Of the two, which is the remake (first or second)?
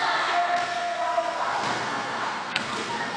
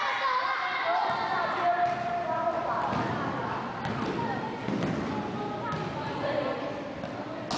first